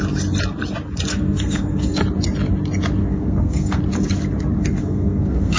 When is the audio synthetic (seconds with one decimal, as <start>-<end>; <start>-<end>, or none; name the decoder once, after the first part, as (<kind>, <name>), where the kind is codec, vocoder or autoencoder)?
1.1-2.0 (codec, SNAC); 3.0-3.8; 4.6-5.6